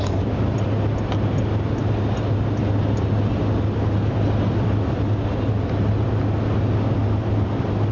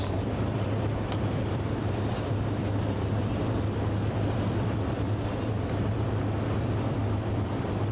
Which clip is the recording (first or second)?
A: first